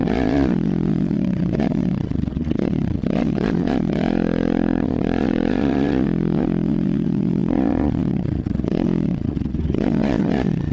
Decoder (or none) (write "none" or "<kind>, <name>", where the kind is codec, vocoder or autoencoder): vocoder, Vocos